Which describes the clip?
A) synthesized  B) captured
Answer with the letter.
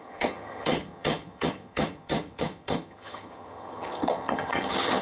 A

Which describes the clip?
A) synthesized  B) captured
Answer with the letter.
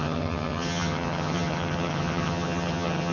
A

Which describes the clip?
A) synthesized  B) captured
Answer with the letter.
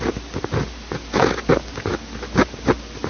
B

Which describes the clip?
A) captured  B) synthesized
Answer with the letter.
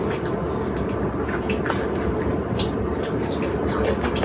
A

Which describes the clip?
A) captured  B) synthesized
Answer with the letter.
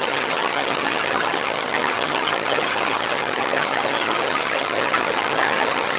B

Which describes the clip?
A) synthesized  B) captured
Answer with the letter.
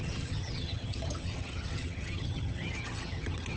A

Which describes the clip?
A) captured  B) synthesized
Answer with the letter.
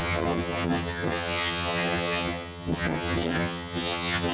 B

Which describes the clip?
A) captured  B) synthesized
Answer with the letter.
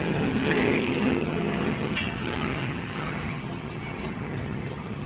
B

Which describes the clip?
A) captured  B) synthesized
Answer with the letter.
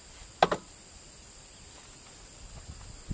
A